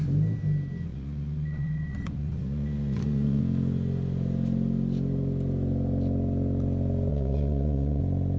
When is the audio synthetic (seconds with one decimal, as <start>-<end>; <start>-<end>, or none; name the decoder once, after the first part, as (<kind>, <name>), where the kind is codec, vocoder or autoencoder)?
0.9-3.4 (vocoder, Vocos); 7.1-8.0